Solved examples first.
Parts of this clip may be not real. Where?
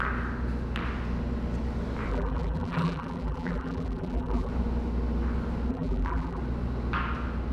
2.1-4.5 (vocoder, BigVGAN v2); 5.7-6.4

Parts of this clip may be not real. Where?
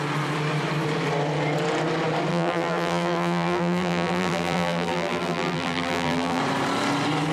2.3-6.4 (vocoder, BigVGAN v2)